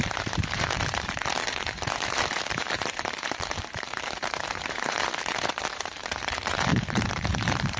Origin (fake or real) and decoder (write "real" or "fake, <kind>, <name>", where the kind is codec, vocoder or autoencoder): fake, vocoder, BigVGAN v2